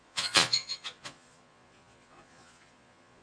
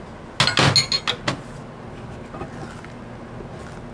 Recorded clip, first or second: second